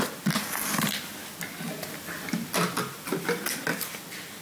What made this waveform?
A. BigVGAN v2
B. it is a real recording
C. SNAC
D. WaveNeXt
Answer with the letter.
B